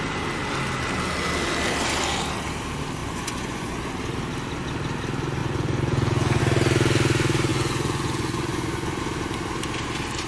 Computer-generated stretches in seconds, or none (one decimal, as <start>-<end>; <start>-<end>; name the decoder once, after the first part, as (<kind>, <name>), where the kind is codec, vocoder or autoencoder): 3.0-3.8 (vocoder, Vocos); 5.4-6.4; 7.5-9.0